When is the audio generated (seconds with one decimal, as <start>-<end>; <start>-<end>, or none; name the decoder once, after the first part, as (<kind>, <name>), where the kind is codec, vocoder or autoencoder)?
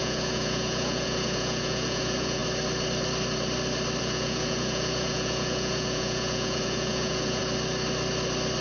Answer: 0.0-2.4 (vocoder, Vocos); 4.0-7.4